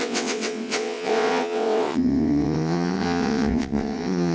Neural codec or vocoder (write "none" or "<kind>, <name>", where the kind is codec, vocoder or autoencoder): vocoder, WaveNeXt